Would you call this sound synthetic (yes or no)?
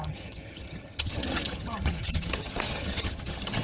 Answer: yes